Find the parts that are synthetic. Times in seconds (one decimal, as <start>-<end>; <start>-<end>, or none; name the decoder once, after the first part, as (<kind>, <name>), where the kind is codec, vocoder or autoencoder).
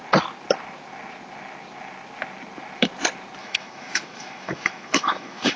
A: 3.4-5.6 (autoencoder, DAC-VAE)